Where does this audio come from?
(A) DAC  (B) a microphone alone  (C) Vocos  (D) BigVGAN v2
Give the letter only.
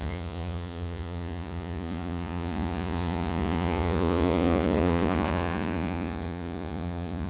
C